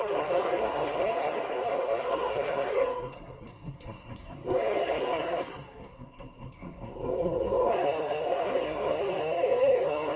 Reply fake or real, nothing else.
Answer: fake